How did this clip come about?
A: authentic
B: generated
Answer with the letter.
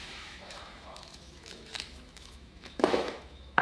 B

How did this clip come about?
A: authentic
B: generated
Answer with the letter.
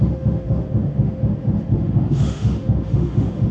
B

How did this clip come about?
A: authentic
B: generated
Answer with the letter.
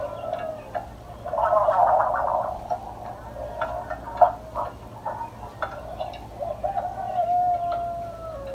A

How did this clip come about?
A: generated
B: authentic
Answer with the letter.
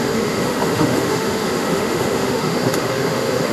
A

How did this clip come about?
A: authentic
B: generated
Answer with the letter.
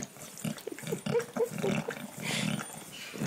A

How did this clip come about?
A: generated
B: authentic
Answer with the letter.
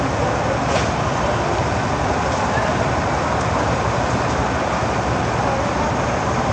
B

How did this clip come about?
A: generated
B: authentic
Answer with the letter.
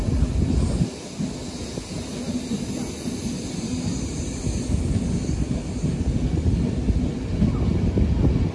B